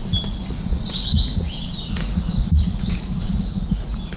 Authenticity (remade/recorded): remade